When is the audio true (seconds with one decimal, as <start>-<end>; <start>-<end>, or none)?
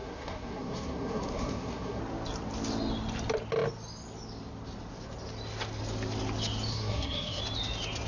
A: 2.0-6.7; 7.4-8.1